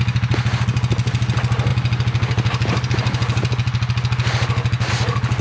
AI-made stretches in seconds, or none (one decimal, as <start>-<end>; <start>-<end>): none